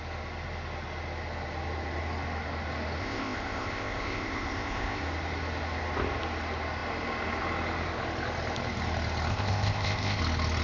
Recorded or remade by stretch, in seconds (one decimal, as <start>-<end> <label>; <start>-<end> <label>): 0.0-3.0 recorded; 3.0-5.0 remade; 5.0-9.3 recorded; 9.3-10.2 remade; 10.2-10.6 recorded